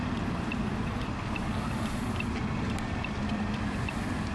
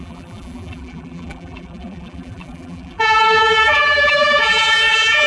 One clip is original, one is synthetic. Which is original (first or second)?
first